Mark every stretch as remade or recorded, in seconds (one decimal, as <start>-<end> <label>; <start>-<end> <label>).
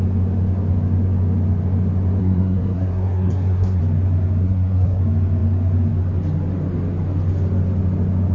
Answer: 0.0-2.2 recorded; 2.2-3.8 remade; 3.8-4.4 recorded; 4.4-5.0 remade; 5.0-8.3 recorded